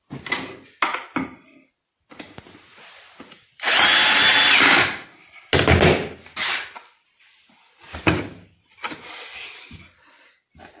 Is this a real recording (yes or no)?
yes